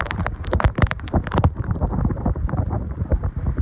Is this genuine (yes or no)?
no